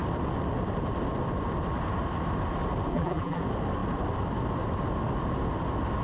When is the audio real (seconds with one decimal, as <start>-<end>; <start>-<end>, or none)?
0.0-2.9; 3.4-6.0